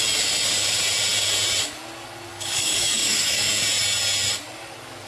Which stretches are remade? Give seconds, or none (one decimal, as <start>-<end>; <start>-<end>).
2.3-3.5